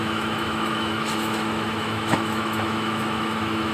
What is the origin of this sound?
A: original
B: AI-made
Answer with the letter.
B